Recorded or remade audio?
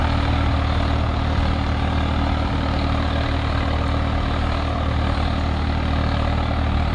recorded